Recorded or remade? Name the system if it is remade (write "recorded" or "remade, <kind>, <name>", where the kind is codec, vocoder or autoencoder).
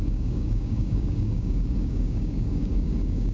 remade, codec, DAC